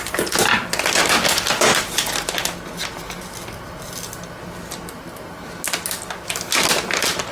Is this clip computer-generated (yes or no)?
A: no